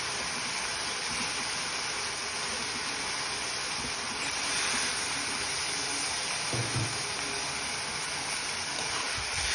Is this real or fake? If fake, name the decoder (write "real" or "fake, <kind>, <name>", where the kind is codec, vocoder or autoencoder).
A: real